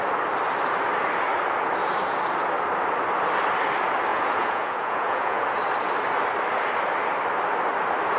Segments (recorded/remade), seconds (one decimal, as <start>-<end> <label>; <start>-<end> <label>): 0.0-4.1 recorded; 4.1-5.6 remade; 5.6-8.2 recorded